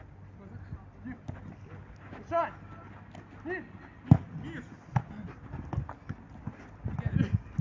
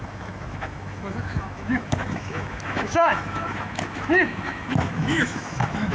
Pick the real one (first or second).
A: first